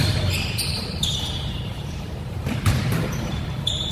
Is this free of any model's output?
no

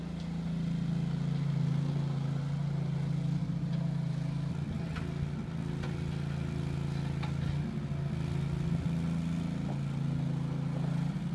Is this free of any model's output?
yes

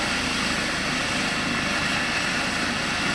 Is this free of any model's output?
yes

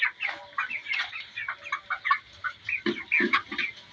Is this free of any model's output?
yes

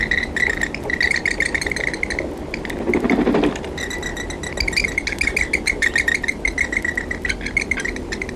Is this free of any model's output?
yes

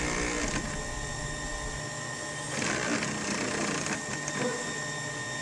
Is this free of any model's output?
yes